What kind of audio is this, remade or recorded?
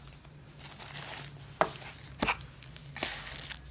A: recorded